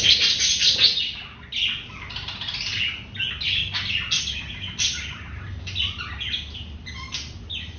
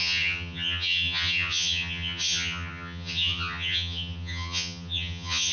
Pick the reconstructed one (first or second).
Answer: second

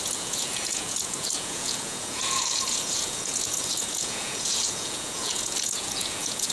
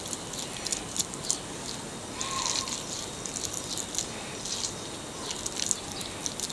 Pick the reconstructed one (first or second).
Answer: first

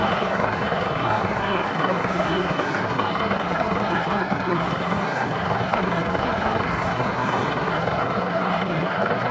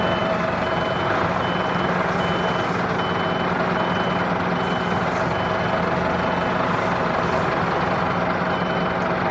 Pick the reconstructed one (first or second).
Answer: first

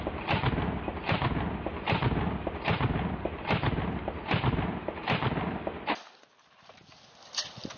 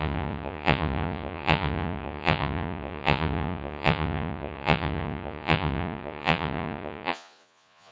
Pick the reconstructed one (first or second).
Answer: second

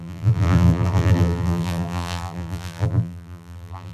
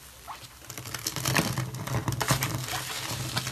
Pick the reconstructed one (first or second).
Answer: first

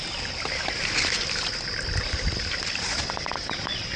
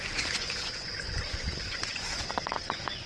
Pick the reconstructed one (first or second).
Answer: second